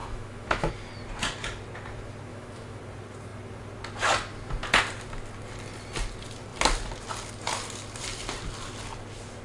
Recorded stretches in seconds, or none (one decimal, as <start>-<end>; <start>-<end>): 0.7-2.3; 2.8-9.4